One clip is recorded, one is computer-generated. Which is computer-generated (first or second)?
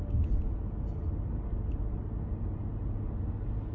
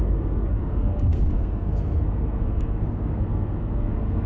second